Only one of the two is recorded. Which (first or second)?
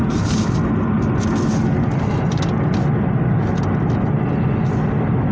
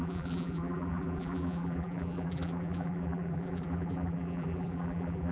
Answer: first